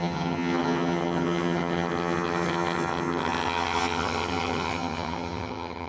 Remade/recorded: remade